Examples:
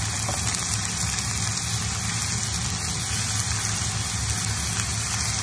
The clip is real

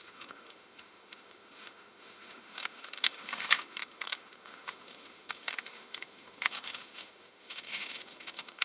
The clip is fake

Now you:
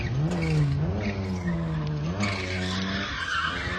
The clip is real